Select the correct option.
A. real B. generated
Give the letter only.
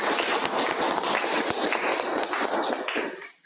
A